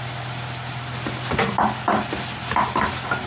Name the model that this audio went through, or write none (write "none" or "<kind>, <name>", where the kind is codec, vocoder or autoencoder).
vocoder, BigVGAN v2